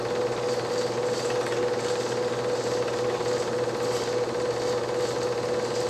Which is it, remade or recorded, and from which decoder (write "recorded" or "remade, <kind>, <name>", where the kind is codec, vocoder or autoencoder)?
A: recorded